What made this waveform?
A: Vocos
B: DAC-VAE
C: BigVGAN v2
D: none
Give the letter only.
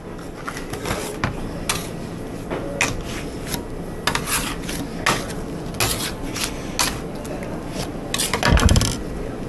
D